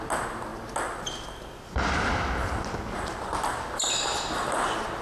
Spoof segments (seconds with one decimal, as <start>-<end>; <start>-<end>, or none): none